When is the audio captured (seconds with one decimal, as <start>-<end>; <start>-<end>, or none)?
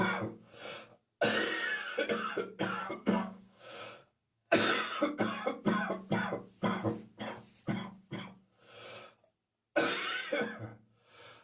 0.0-2.8; 3.6-4.0; 4.6-11.4